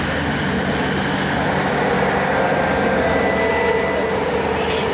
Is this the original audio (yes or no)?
yes